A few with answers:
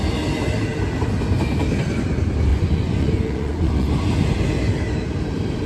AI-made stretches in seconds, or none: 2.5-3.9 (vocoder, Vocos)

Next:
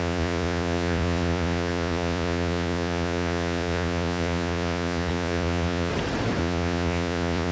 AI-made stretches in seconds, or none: 0.0-5.9 (vocoder, Vocos); 6.4-7.5

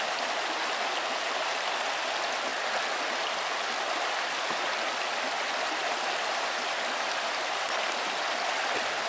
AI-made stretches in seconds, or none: none

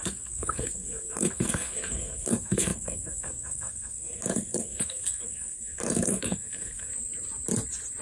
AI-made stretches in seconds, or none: 0.0-6.9 (codec, SNAC)

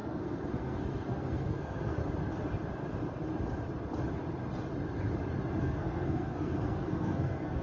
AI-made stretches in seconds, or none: 0.0-2.0 (codec, SNAC); 5.6-7.6

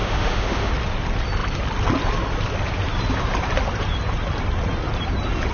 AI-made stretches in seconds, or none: 0.0-0.7 (autoencoder, DAC-VAE)

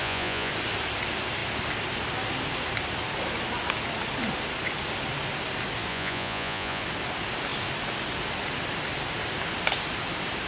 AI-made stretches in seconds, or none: 0.0-0.5 (vocoder, Vocos); 5.9-6.8

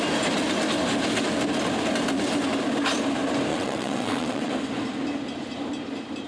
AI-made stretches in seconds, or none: 3.5-4.5 (vocoder, WaveNeXt)